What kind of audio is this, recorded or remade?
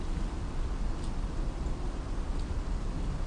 remade